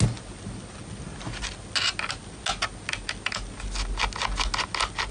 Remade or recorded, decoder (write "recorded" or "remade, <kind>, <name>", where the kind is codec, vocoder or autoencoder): recorded